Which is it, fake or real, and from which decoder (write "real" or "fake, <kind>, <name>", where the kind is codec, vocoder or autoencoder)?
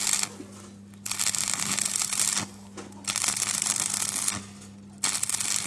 real